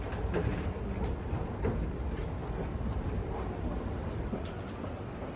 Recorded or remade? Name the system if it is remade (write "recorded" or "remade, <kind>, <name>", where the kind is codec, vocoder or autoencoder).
recorded